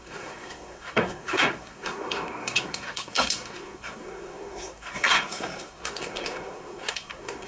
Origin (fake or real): fake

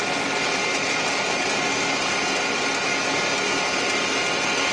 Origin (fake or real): real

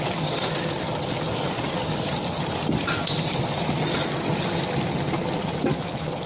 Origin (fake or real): real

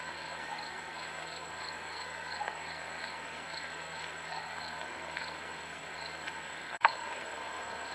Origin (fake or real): fake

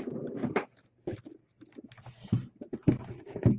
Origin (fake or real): real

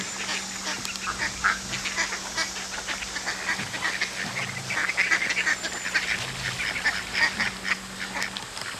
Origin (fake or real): real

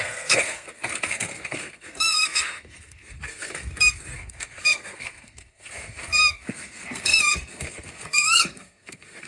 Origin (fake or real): fake